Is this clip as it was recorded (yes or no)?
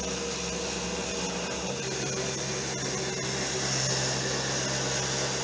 yes